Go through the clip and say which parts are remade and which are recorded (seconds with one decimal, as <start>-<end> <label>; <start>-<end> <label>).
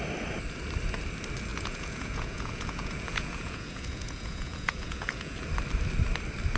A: 0.0-1.5 recorded; 1.5-5.5 remade; 5.5-6.6 recorded